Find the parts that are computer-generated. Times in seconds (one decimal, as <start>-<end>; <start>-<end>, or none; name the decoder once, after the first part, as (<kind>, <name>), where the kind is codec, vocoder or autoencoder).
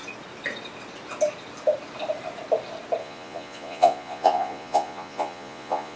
3.0-6.0 (vocoder, Vocos)